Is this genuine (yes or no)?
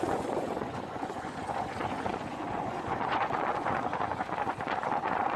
no